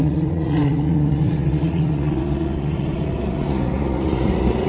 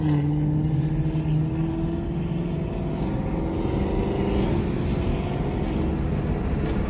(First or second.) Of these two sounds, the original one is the second